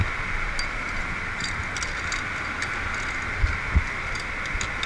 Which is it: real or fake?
real